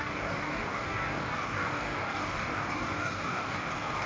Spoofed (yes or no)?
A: yes